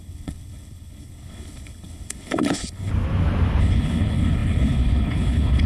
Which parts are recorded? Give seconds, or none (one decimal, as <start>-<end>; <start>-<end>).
2.9-3.6

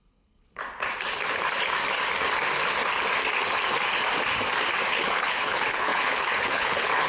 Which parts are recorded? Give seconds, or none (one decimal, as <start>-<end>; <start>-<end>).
0.6-4.9

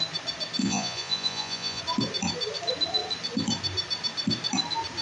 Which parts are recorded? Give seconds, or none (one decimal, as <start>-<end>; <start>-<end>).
0.0-0.6; 1.8-5.0

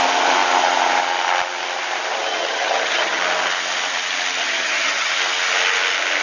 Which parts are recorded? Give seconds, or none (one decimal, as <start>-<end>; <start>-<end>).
0.0-2.1; 3.2-4.4; 5.1-6.2

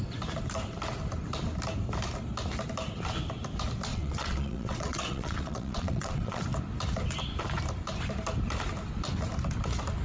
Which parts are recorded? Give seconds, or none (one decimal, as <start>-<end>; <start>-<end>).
0.0-3.9; 6.4-10.0

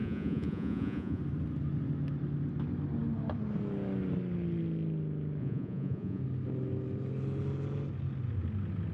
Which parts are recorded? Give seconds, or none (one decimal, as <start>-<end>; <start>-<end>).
1.2-5.4; 6.2-8.9

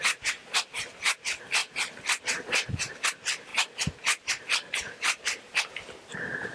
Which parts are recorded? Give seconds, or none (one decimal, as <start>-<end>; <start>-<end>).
1.6-2.2; 3.5-4.4